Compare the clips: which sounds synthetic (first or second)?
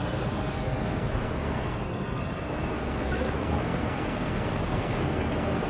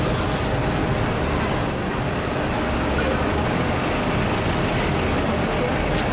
first